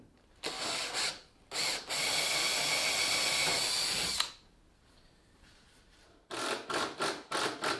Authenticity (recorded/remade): recorded